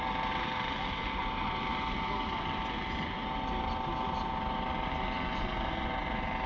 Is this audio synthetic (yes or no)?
no